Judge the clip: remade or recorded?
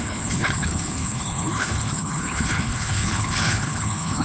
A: remade